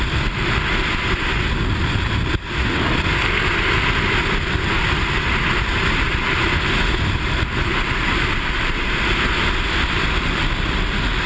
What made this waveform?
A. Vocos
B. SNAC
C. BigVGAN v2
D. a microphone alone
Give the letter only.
D